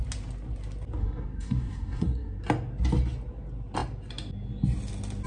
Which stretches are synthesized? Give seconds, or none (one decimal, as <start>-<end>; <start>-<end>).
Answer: 1.0-2.4